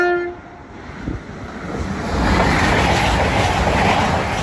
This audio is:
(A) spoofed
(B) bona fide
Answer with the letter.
B